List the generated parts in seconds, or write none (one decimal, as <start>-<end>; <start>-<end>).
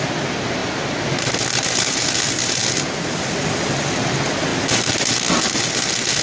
none